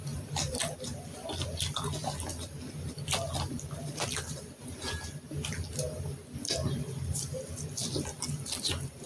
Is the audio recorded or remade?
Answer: recorded